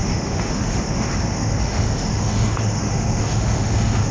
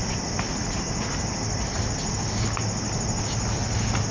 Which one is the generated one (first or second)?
first